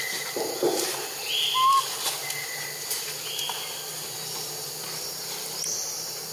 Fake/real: real